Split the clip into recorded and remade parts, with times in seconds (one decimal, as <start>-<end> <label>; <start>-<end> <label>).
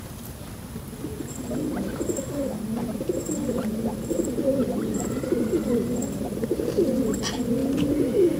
0.0-1.9 recorded; 1.9-6.9 remade; 6.9-7.6 recorded; 7.6-8.4 remade